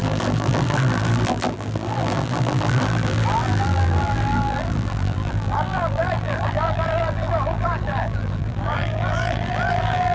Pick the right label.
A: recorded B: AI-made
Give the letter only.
B